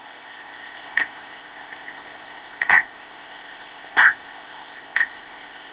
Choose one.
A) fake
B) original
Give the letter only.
A